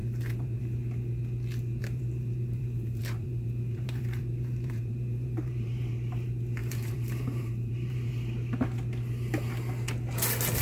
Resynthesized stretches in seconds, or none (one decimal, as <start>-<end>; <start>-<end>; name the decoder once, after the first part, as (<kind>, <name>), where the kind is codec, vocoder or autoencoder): 0.0-0.6 (vocoder, BigVGAN v2); 1.8-5.9; 6.6-8.1